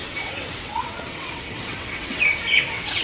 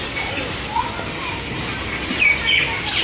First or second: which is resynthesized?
first